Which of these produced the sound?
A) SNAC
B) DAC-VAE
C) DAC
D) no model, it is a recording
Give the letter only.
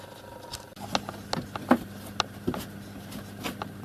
D